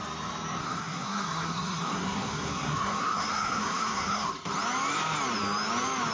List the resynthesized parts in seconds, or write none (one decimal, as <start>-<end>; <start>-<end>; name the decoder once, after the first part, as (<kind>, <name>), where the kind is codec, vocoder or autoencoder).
0.6-4.3 (codec, SNAC)